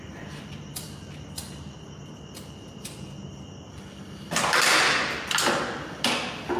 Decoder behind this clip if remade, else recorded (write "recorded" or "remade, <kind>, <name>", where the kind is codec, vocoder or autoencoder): recorded